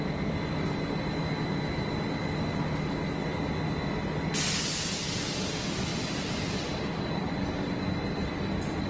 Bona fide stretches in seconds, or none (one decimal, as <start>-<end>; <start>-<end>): 0.0-8.9

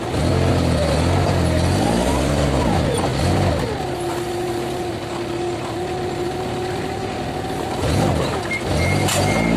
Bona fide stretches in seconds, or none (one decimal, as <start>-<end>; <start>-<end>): 0.0-9.6

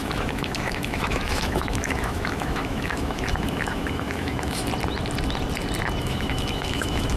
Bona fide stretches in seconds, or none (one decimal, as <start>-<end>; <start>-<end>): 4.7-6.0

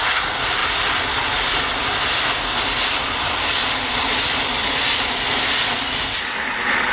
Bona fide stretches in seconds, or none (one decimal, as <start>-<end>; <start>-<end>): 0.0-6.9

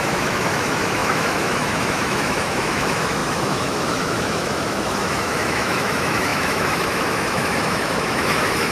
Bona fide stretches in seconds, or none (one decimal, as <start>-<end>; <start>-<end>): none

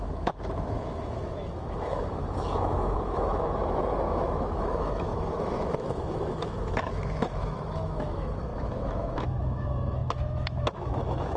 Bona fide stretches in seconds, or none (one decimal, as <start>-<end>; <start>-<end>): none